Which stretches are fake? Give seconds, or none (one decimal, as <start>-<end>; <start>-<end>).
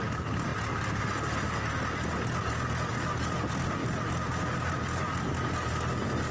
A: none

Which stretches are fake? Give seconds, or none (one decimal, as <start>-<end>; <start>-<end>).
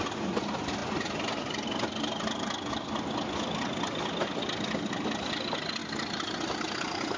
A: none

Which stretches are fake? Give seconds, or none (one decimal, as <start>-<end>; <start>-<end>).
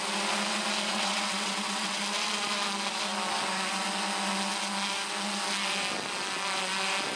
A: 0.9-2.0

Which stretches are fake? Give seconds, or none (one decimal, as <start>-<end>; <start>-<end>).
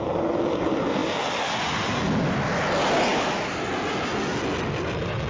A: none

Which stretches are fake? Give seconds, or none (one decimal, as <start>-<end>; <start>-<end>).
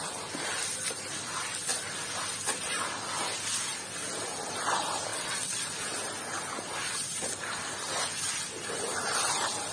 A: 5.1-5.6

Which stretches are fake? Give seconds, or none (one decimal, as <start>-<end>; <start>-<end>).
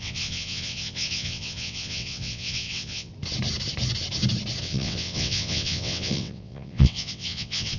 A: 0.0-3.1; 4.6-7.8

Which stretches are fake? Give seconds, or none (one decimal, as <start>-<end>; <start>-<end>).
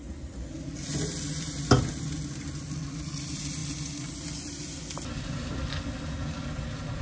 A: none